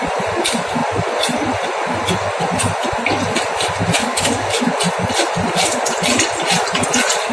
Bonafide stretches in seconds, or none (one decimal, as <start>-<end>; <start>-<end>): 0.0-4.0; 4.6-7.3